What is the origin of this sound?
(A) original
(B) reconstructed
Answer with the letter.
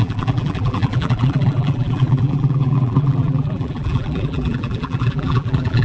B